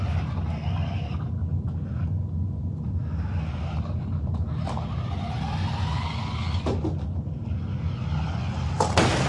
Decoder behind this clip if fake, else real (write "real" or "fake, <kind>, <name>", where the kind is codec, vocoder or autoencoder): real